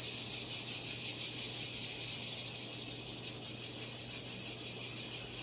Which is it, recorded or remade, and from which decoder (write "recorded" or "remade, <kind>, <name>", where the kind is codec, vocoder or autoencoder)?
recorded